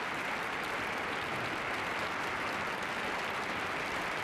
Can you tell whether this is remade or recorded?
recorded